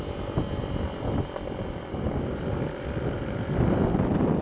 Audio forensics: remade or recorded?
recorded